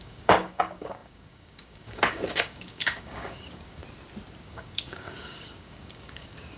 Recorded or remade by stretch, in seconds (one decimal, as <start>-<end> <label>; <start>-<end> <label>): 0.0-3.8 remade; 3.8-4.4 recorded; 4.4-6.6 remade